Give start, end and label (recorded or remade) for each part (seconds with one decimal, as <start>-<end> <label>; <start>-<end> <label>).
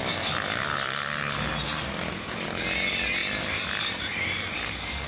0.0-5.1 recorded